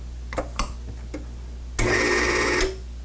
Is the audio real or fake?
real